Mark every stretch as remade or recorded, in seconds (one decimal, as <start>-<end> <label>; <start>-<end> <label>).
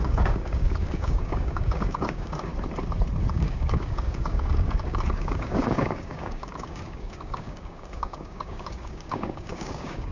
0.0-2.5 remade; 2.5-3.3 recorded; 3.3-10.1 remade